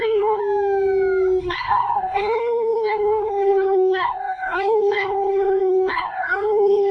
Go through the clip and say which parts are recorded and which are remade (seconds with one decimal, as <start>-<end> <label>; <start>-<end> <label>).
0.0-0.4 remade; 0.4-1.4 recorded; 1.4-6.9 remade